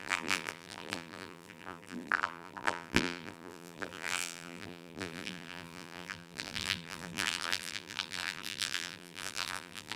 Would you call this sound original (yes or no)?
no